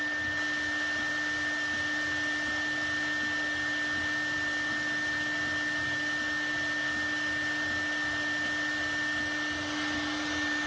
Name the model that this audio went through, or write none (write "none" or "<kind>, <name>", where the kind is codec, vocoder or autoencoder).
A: none